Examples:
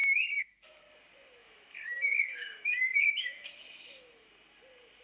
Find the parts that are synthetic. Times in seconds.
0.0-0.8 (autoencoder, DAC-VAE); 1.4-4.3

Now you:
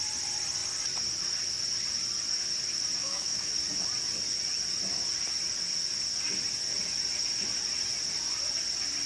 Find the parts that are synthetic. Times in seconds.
3.0-3.5 (autoencoder, DAC-VAE)

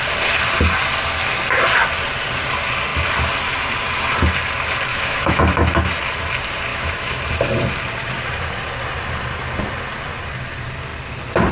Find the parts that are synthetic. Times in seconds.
4.9-5.4 (autoencoder, DAC-VAE); 6.7-7.2

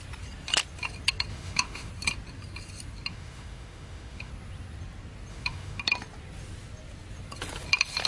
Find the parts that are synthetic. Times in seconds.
1.3-1.9 (autoencoder, DAC-VAE); 3.1-4.3; 5.3-5.8